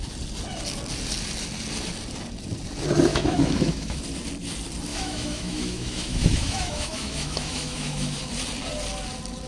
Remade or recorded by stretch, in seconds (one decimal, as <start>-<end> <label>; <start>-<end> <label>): 0.0-3.1 recorded; 3.1-4.0 remade; 4.0-4.9 recorded; 4.9-8.2 remade; 8.2-9.5 recorded